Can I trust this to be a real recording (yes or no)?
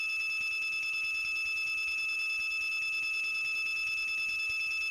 yes